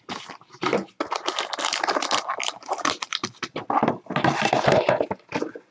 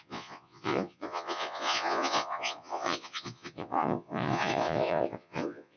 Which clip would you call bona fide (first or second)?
first